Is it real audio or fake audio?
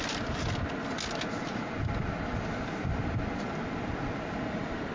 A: real